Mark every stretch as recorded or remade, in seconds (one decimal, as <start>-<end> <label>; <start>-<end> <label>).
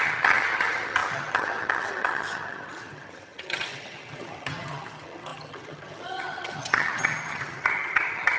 0.0-8.4 remade